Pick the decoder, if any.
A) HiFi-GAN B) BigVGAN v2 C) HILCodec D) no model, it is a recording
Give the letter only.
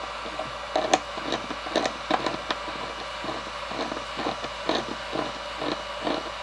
D